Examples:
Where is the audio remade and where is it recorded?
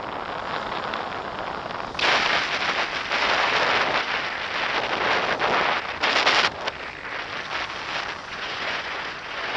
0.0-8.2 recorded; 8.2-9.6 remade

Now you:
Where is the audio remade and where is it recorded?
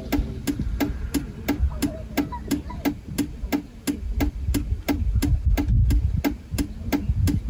0.0-7.5 recorded